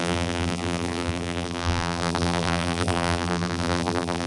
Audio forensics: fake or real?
fake